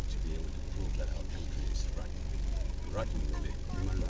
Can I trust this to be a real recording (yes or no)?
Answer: yes